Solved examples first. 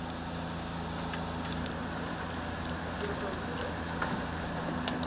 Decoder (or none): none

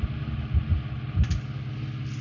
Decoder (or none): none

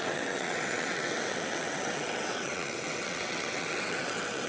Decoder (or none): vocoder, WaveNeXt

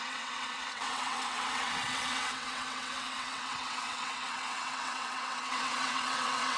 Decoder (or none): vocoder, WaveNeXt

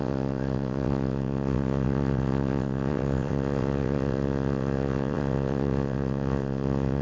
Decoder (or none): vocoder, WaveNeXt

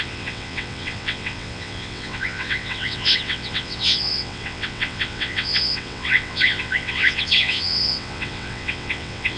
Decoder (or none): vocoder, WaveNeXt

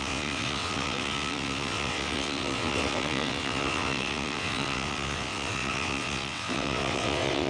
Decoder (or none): vocoder, WaveNeXt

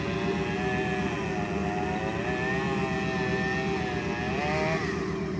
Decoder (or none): none